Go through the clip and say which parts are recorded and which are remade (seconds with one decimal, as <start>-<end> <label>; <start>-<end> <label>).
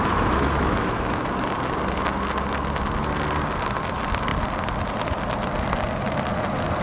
0.0-1.2 remade; 1.2-6.8 recorded